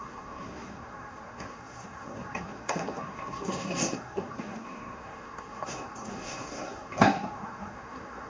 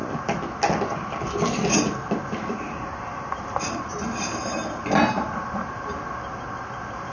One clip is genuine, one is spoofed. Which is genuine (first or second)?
second